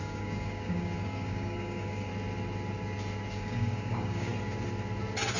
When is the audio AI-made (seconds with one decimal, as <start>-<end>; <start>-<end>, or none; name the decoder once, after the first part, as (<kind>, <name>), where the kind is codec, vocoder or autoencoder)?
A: 0.0-2.1 (codec, DAC); 3.3-4.3

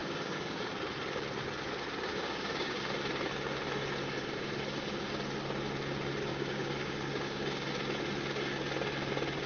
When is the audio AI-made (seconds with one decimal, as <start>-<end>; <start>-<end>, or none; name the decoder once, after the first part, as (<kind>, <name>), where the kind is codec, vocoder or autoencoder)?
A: 0.0-0.6 (codec, DAC); 2.1-2.8; 6.3-7.7